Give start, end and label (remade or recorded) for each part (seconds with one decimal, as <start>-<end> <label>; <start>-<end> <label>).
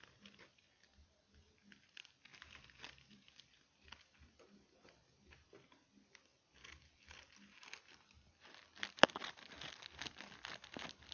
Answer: 0.0-2.3 recorded; 2.3-3.3 remade; 3.3-11.1 recorded